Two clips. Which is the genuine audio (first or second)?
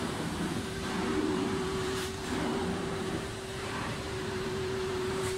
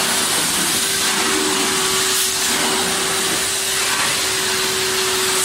second